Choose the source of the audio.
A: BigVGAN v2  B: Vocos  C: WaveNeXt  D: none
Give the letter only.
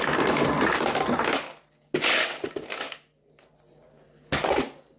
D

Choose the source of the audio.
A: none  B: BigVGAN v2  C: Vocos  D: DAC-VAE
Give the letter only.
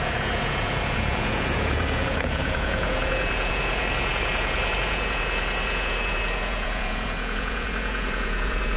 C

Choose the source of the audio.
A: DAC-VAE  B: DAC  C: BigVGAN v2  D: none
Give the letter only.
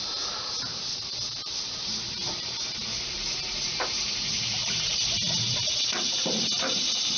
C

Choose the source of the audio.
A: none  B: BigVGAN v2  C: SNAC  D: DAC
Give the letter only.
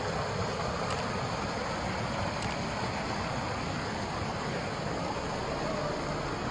A